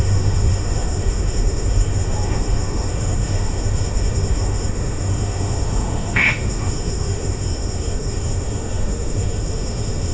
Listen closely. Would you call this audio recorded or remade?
remade